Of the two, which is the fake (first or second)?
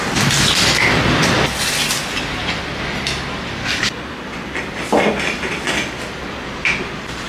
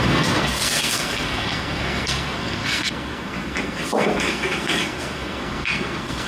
second